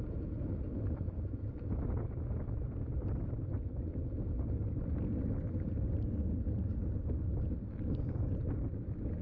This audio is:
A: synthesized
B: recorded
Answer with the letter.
B